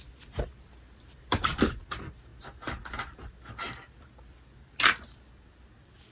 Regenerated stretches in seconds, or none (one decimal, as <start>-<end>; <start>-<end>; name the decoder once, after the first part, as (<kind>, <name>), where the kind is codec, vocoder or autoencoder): 0.0-2.3 (vocoder, BigVGAN v2)